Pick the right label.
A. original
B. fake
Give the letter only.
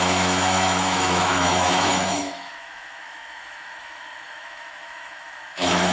B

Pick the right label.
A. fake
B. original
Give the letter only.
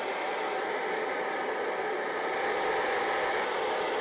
B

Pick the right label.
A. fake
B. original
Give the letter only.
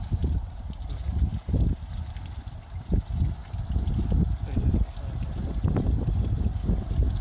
B